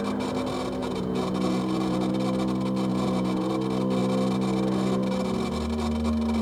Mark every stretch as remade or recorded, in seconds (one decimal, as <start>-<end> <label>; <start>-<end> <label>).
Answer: 0.0-0.8 recorded; 0.8-2.1 remade; 2.1-2.9 recorded; 2.9-3.5 remade; 3.5-6.4 recorded